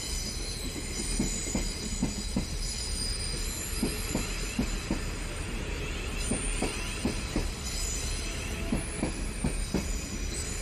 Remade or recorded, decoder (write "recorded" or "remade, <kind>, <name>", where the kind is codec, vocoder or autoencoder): recorded